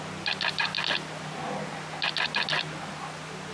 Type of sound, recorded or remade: recorded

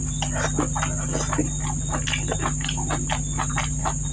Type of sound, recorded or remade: recorded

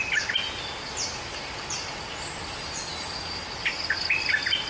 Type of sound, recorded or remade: recorded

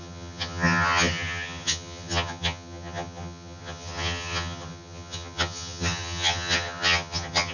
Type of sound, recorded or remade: remade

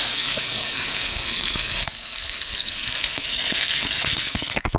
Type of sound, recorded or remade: remade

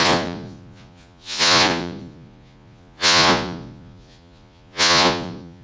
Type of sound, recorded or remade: remade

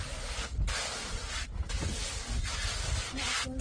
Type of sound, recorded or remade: recorded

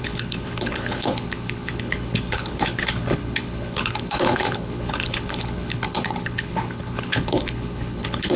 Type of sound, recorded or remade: remade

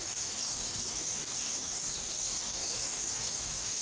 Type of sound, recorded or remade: remade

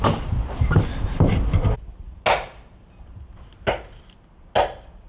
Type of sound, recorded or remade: recorded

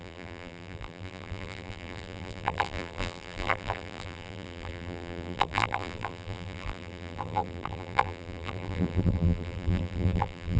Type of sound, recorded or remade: remade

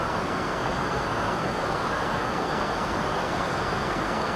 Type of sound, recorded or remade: remade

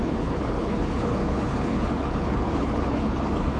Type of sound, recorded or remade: remade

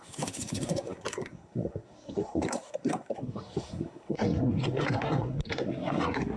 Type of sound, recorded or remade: remade